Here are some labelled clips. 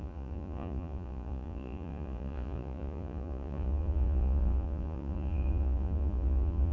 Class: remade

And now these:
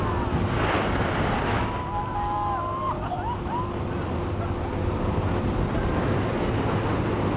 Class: recorded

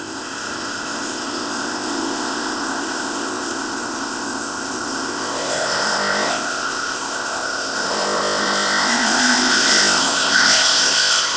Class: remade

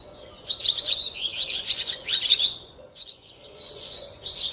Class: remade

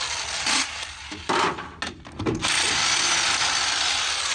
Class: recorded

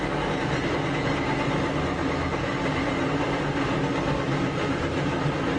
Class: recorded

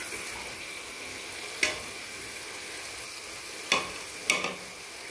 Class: recorded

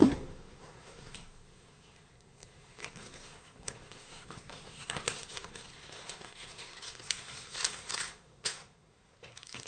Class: remade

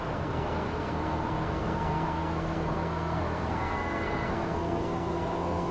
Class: remade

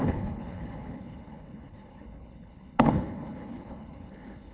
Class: remade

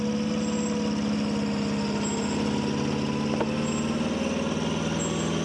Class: recorded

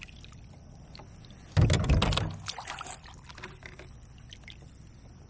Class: recorded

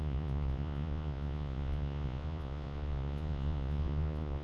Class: remade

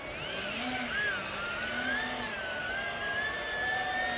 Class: recorded